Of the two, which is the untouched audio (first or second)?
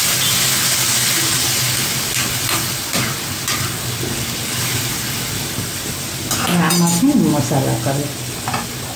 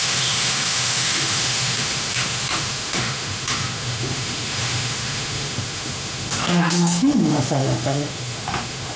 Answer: first